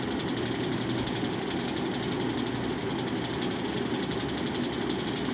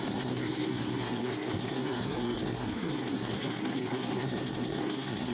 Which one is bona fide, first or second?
first